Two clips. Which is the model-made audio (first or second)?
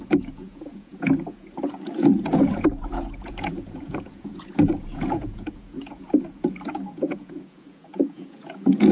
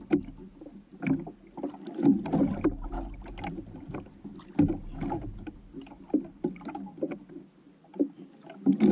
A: first